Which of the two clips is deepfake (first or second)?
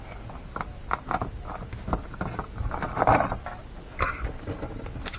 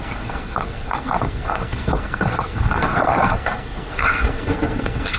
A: second